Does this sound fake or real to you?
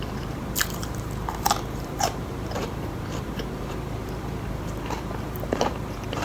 fake